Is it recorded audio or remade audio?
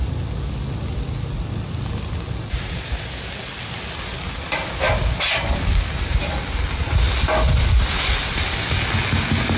recorded